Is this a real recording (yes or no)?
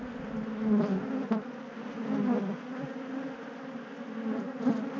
yes